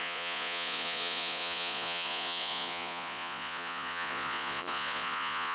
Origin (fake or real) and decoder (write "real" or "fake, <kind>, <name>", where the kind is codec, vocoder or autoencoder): fake, vocoder, Vocos